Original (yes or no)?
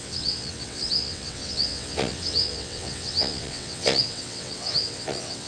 no